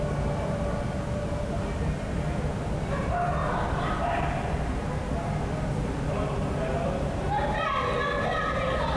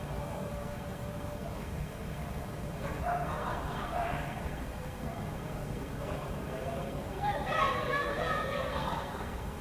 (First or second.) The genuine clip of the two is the first